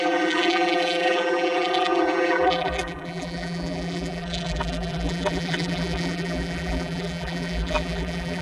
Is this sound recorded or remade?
remade